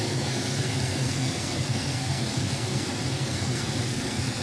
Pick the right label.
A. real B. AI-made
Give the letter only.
B